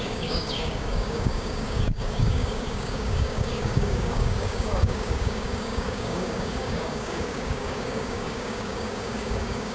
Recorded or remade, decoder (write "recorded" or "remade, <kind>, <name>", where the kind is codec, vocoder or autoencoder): remade, codec, DAC